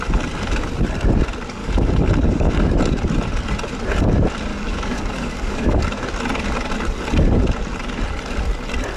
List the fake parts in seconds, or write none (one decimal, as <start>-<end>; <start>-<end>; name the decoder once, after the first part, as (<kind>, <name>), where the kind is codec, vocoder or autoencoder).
1.6-2.7 (codec, DAC); 4.5-5.8